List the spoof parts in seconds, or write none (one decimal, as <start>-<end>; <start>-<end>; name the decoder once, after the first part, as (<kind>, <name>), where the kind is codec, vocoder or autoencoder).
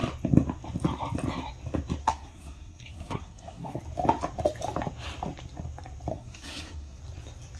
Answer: 2.0-3.8 (codec, SNAC); 6.1-7.0